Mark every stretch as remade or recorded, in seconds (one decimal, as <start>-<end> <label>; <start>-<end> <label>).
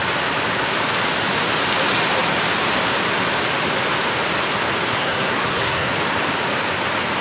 0.0-4.9 recorded; 4.9-5.9 remade; 5.9-7.2 recorded